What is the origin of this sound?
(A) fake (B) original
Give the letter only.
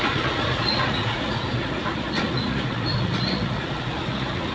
A